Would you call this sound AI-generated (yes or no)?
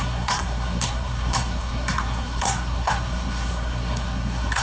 yes